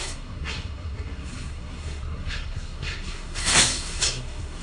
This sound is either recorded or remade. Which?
remade